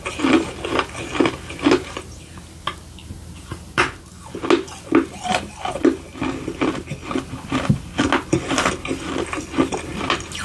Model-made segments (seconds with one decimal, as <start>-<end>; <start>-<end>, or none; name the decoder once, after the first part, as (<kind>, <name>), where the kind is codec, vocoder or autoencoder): 3.0-4.0 (vocoder, BigVGAN v2)